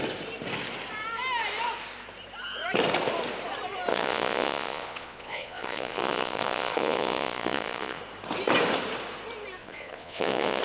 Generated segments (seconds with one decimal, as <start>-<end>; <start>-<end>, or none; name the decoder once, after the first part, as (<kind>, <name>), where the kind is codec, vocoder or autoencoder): 3.9-8.0 (vocoder, Vocos); 9.6-10.6